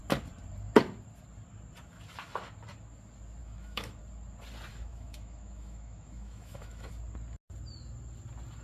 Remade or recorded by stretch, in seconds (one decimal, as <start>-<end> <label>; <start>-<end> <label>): 0.0-3.4 recorded; 3.4-4.0 remade; 4.0-4.7 recorded; 4.7-6.9 remade; 6.9-8.6 recorded

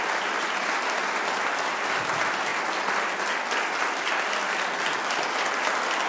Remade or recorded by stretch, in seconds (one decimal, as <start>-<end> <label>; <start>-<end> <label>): 0.0-6.1 recorded

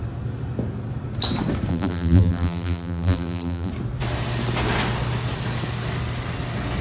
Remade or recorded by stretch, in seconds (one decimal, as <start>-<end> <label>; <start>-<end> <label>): 0.0-1.7 recorded; 1.7-3.7 remade; 3.7-6.8 recorded

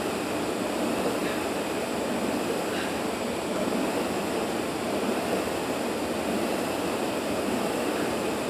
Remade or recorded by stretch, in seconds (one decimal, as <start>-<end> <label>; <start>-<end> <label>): 0.0-8.5 remade